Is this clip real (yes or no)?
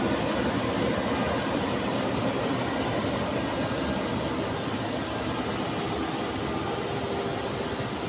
yes